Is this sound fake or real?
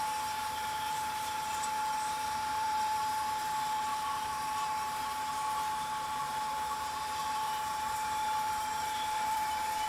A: fake